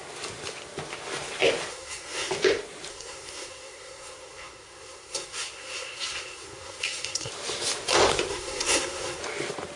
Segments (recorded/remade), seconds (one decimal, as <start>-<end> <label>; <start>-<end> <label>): 0.0-1.7 recorded; 1.7-2.3 remade; 2.3-2.9 recorded; 2.9-7.3 remade; 7.3-8.3 recorded; 8.3-9.2 remade; 9.2-9.8 recorded